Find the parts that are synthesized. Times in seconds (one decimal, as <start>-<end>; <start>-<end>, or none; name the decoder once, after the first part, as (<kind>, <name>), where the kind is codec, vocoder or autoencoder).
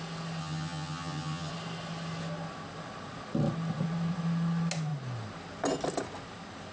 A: 0.4-1.5 (vocoder, HiFi-GAN)